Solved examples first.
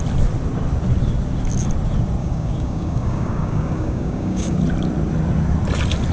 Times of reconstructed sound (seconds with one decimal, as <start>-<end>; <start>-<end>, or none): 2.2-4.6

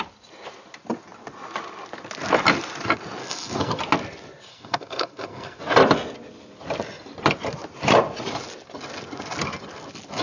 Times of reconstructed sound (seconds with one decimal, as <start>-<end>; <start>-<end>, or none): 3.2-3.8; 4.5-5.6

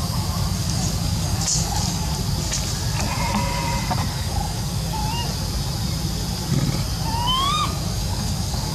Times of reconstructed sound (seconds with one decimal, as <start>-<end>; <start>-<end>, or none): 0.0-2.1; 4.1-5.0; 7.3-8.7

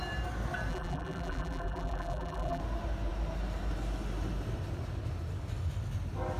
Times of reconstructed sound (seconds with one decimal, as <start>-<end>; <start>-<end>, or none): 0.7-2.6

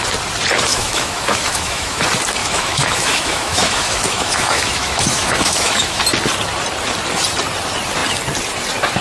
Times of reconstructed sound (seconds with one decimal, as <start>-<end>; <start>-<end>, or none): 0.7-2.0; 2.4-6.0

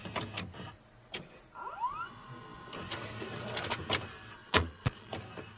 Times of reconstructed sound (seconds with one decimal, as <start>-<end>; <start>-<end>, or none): 4.4-5.1

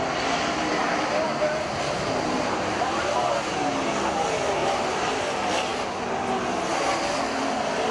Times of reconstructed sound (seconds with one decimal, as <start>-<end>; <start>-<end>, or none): 0.8-3.7; 4.6-5.1

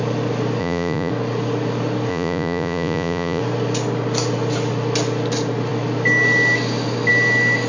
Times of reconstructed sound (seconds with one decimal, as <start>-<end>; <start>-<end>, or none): 0.6-1.1; 2.1-3.4